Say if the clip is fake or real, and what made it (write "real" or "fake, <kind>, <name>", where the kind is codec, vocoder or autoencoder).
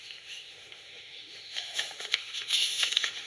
fake, autoencoder, DAC-VAE